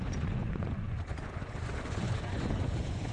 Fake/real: fake